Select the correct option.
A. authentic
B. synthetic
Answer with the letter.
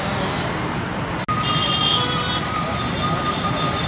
A